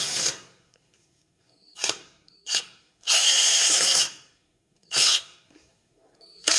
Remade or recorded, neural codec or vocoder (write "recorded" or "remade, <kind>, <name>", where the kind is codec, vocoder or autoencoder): remade, codec, SNAC